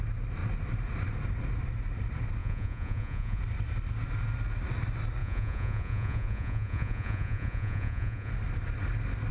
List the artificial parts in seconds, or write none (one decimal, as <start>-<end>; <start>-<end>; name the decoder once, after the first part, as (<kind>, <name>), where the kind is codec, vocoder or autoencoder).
2.4-3.4 (vocoder, Vocos); 5.2-8.3